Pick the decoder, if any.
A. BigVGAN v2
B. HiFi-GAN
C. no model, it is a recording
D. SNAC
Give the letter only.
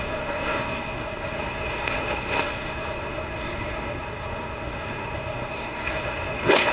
D